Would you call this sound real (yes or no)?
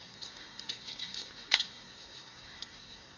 no